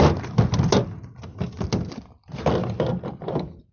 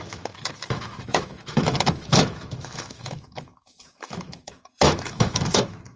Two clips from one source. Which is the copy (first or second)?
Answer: second